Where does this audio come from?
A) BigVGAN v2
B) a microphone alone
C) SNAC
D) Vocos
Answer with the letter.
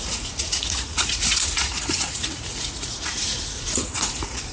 D